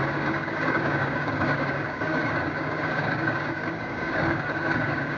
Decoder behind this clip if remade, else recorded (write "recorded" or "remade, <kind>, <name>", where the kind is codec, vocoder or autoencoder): remade, codec, DAC